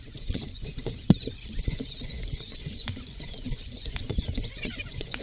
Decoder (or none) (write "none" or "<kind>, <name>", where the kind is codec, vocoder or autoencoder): vocoder, Vocos